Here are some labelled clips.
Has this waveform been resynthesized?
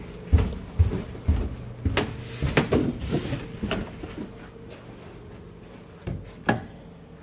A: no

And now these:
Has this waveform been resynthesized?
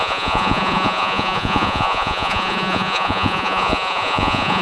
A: yes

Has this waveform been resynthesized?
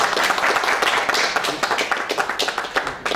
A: no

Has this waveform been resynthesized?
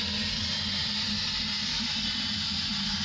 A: no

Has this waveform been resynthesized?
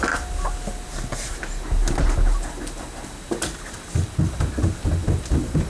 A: no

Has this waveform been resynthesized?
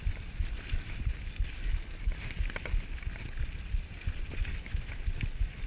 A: no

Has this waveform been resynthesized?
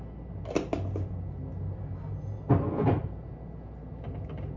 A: no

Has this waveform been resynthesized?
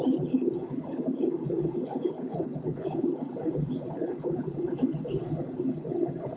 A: yes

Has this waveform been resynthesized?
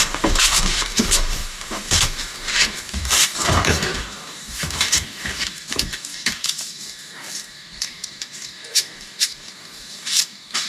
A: yes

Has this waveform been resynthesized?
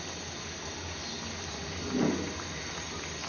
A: no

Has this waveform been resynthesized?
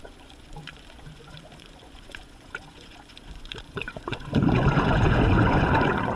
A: yes